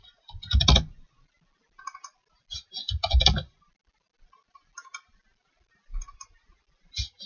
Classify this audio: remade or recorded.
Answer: recorded